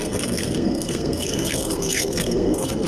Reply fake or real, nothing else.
fake